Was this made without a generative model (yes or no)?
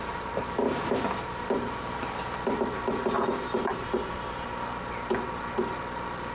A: yes